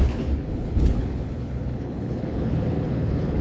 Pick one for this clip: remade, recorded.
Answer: remade